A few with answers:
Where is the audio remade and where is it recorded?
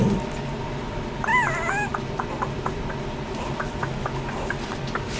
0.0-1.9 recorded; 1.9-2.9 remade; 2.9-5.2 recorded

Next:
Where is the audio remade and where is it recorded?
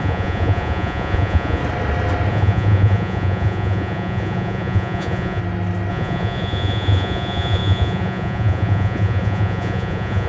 0.0-1.6 remade; 1.6-2.3 recorded; 2.3-5.4 remade; 5.4-5.9 recorded; 5.9-10.3 remade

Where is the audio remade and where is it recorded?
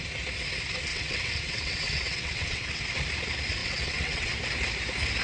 0.0-0.9 recorded; 0.9-2.8 remade; 2.8-3.6 recorded; 3.6-4.3 remade; 4.3-5.2 recorded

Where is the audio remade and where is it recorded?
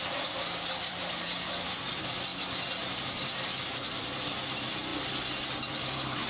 0.0-2.3 remade; 2.3-3.1 recorded; 3.1-4.9 remade; 4.9-5.5 recorded; 5.5-6.3 remade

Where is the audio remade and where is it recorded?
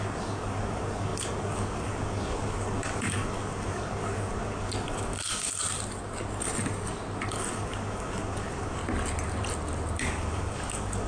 0.0-5.6 remade; 5.6-7.3 recorded; 7.3-8.8 remade; 8.8-10.0 recorded; 10.0-11.1 remade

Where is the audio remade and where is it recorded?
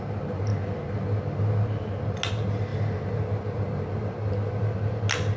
0.0-5.4 recorded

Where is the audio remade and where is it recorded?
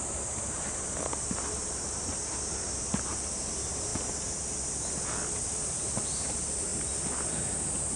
0.0-3.9 remade; 3.9-5.3 recorded; 5.3-6.7 remade; 6.7-7.3 recorded; 7.3-8.0 remade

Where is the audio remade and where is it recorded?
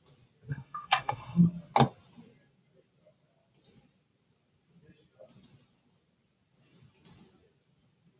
0.0-0.5 recorded; 0.5-1.4 remade; 1.4-8.2 recorded